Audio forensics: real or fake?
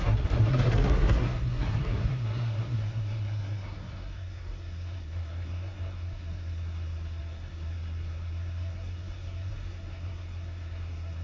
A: fake